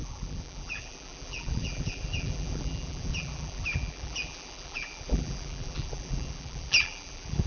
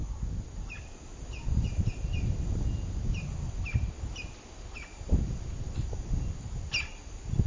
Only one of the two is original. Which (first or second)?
second